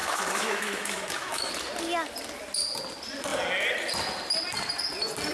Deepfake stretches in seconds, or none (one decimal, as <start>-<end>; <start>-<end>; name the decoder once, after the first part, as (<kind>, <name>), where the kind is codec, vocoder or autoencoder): 0.0-1.5 (autoencoder, DAC-VAE)